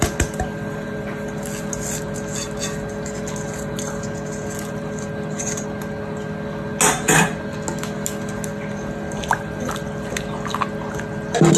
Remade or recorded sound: recorded